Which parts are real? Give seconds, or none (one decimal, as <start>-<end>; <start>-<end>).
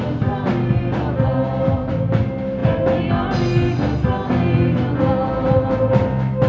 0.0-6.5